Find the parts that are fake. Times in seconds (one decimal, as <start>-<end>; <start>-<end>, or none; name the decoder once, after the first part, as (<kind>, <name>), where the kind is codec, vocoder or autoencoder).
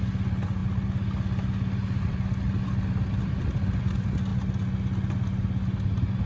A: none